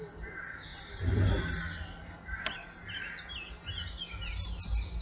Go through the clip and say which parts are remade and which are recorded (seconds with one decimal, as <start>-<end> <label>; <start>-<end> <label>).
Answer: 0.0-5.0 recorded